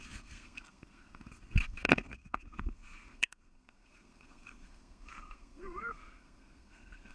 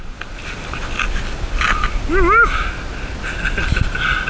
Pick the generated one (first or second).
first